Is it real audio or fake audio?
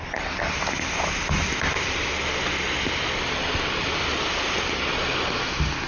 real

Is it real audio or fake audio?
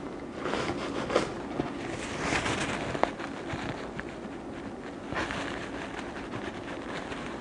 real